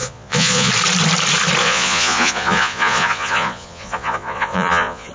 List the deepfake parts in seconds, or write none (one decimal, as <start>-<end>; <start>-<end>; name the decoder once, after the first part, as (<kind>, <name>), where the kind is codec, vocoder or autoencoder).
0.0-0.7 (vocoder, Vocos); 1.6-5.1